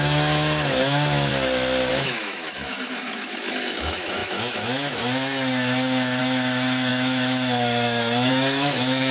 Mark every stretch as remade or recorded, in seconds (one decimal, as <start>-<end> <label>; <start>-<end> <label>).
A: 0.0-1.3 remade; 1.3-1.9 recorded; 1.9-9.1 remade